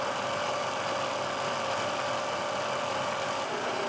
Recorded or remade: recorded